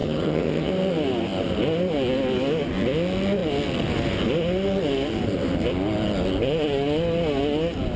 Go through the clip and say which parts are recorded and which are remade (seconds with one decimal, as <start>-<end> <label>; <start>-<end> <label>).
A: 0.0-0.7 remade; 0.7-8.0 recorded